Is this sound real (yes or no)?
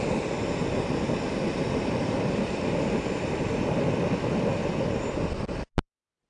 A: yes